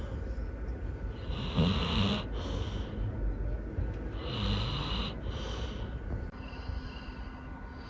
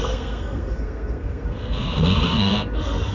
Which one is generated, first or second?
second